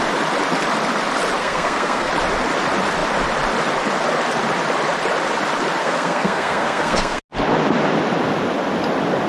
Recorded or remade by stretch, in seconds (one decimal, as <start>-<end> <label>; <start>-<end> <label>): 0.0-1.4 recorded; 1.4-2.1 remade; 2.1-5.8 recorded; 5.8-7.2 remade; 7.2-9.3 recorded